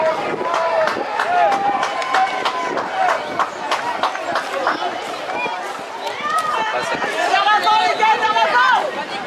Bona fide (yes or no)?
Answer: yes